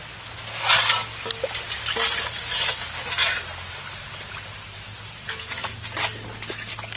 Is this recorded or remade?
recorded